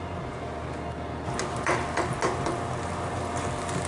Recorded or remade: recorded